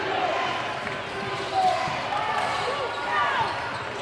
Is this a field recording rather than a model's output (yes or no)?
yes